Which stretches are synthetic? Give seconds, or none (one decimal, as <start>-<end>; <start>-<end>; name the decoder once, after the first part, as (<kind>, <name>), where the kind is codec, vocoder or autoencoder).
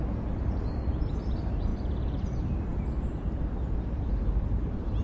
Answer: none